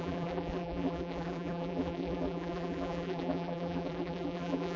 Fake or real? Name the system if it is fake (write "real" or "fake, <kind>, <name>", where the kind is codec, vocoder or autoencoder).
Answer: fake, vocoder, BigVGAN v2